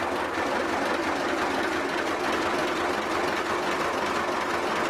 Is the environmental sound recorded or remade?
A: recorded